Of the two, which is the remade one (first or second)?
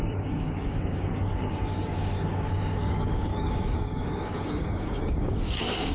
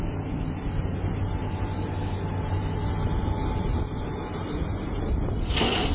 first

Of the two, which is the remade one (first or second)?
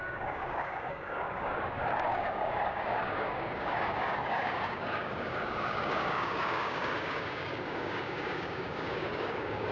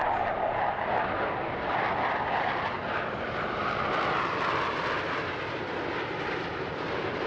first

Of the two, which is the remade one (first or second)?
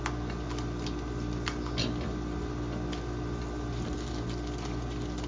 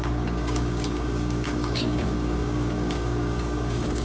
second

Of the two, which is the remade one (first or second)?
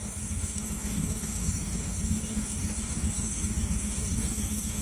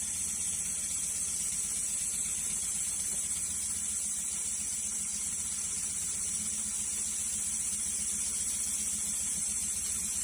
first